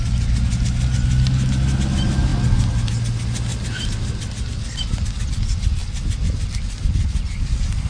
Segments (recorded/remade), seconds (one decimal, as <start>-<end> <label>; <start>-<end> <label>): 0.0-7.9 recorded